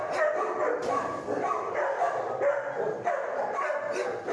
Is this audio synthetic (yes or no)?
yes